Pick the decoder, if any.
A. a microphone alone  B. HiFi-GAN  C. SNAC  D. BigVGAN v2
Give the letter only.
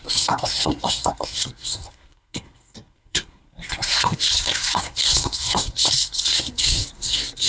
C